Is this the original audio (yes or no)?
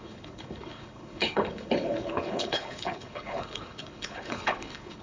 no